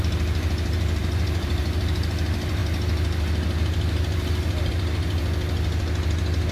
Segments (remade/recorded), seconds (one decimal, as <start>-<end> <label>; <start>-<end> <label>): 0.0-1.0 recorded; 1.0-1.9 remade; 1.9-6.5 recorded